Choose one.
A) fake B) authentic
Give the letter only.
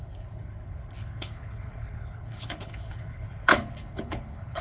A